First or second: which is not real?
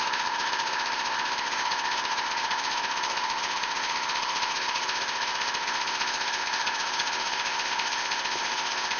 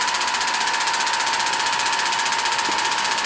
first